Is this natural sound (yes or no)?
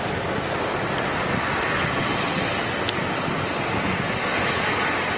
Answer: yes